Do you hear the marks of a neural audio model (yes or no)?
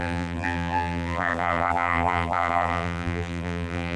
yes